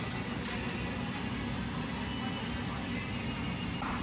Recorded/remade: recorded